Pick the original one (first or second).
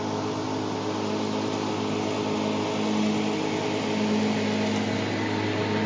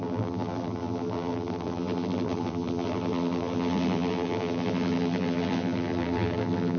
first